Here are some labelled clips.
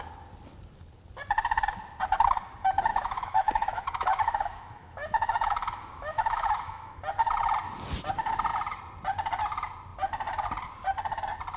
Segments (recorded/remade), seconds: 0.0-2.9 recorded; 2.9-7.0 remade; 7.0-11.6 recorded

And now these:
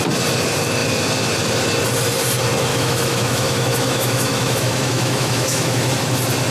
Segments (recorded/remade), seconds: 0.0-2.7 recorded; 2.7-5.9 remade; 5.9-6.5 recorded

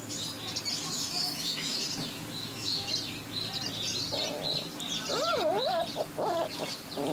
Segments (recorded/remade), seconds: 0.0-0.8 recorded; 0.8-2.9 remade; 2.9-7.1 recorded

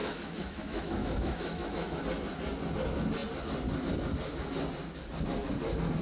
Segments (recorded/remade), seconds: 0.0-2.0 remade; 2.0-6.0 recorded

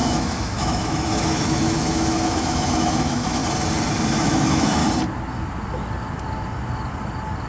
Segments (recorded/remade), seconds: 0.0-3.4 remade; 3.4-4.1 recorded; 4.1-4.8 remade; 4.8-7.5 recorded